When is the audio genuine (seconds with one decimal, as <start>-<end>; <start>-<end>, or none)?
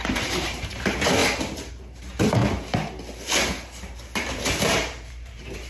1.2-1.7; 2.4-4.3